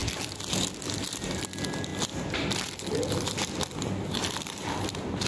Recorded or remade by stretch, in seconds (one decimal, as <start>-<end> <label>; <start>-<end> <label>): 0.0-1.9 recorded; 1.9-5.3 remade